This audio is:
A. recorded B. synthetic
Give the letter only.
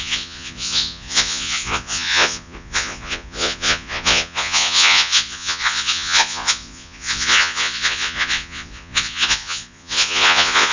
B